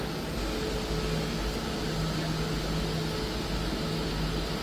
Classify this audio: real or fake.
real